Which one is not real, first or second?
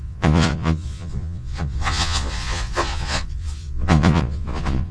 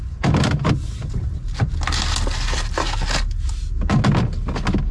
first